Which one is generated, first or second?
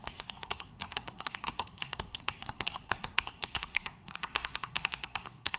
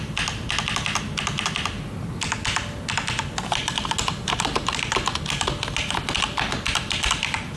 first